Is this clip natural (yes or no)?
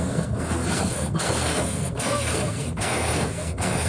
no